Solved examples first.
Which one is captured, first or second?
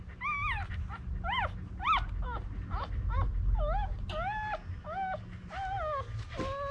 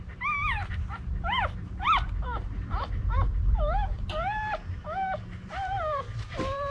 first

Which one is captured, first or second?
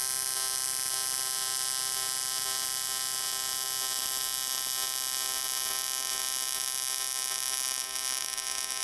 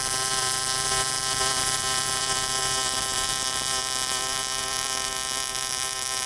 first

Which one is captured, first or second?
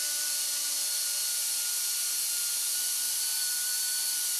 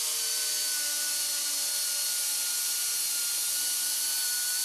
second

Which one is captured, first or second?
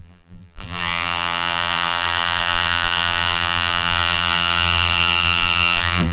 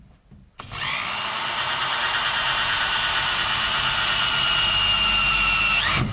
second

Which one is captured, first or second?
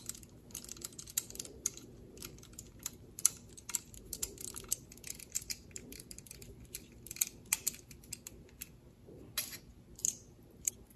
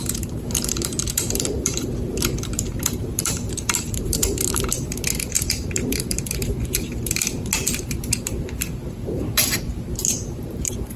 first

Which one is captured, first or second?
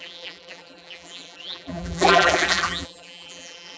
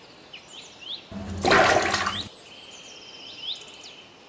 second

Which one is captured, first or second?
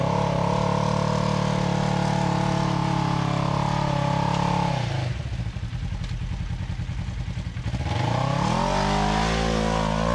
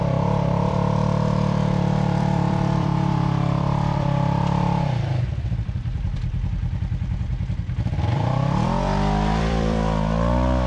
first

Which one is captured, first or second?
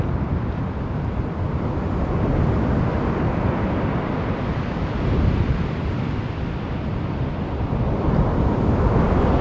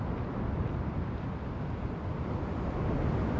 second